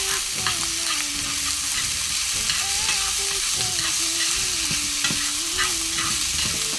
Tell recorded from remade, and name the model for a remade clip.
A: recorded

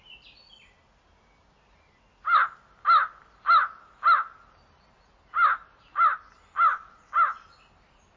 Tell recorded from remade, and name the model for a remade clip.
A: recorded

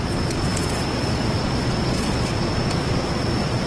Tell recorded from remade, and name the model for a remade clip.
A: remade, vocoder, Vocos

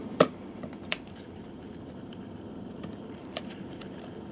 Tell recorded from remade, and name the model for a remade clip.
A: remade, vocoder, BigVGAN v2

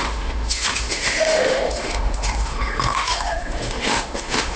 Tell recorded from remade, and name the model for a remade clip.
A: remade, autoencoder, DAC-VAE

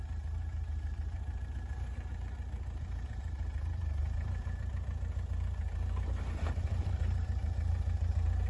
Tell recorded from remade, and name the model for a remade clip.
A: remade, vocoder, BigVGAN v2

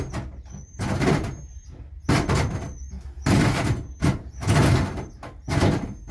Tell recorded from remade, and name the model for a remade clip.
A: recorded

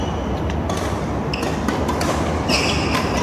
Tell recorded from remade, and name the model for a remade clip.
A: recorded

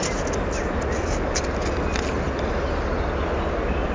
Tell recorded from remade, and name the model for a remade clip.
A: recorded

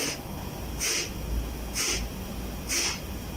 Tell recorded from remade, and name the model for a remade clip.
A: recorded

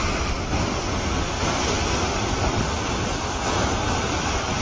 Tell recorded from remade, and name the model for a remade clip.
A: recorded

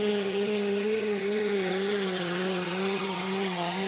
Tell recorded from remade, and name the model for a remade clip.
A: remade, vocoder, HiFi-GAN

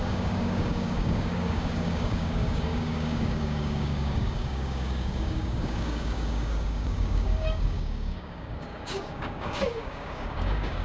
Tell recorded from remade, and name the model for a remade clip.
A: remade, codec, DAC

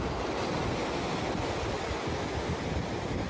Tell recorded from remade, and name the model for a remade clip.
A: recorded